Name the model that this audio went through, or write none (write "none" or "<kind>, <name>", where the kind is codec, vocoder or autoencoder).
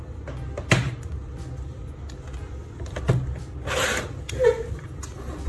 none